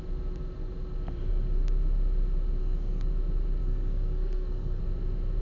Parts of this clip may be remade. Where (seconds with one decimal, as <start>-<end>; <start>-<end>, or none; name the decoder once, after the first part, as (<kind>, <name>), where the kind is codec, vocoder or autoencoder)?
2.6-3.1 (codec, SNAC); 3.6-4.8